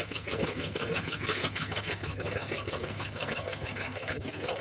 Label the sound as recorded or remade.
remade